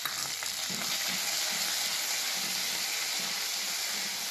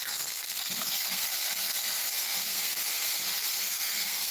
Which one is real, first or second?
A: first